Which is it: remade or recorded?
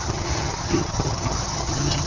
remade